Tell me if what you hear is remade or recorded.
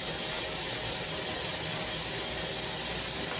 recorded